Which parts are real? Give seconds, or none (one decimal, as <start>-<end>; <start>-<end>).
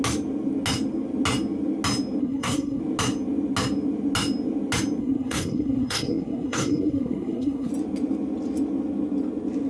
0.0-2.2; 2.8-5.0; 7.7-9.7